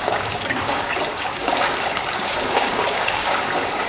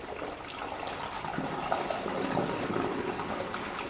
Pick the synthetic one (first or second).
first